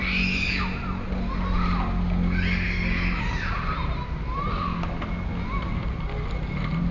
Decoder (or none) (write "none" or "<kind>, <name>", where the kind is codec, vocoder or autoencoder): none